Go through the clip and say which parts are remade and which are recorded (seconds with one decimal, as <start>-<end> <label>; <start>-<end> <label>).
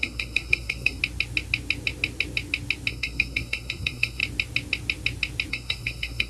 0.0-1.0 remade; 1.0-2.9 recorded; 2.9-4.2 remade; 4.2-5.5 recorded; 5.5-6.3 remade